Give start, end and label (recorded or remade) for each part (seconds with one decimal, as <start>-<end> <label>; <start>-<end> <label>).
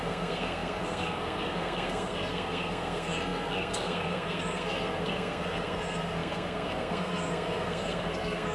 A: 0.0-8.5 remade